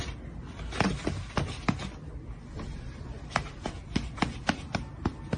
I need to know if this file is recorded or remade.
recorded